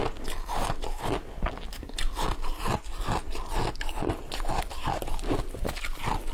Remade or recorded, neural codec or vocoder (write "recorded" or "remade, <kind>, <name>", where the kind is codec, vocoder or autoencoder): recorded